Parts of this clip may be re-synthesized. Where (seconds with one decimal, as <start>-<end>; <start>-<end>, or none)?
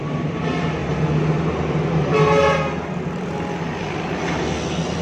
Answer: none